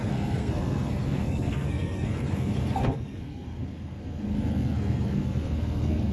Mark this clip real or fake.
fake